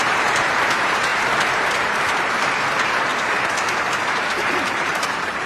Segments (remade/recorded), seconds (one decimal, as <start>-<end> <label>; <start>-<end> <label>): 0.0-3.1 remade; 3.1-3.9 recorded; 3.9-5.5 remade